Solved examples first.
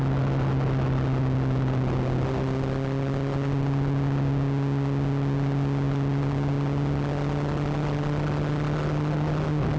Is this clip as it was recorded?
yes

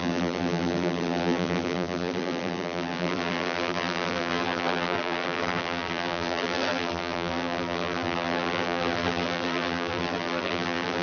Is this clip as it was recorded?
no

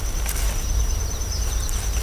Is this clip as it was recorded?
yes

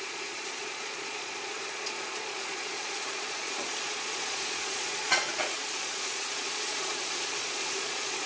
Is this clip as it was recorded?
no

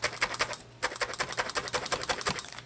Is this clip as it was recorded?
yes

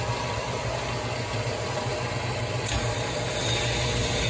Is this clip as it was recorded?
yes